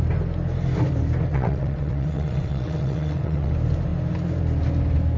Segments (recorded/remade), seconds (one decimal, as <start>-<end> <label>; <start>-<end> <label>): 0.0-1.3 recorded; 1.3-3.5 remade; 3.5-5.2 recorded